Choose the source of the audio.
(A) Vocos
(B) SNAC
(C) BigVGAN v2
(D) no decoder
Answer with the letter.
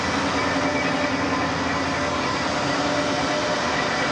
D